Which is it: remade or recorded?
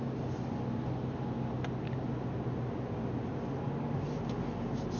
recorded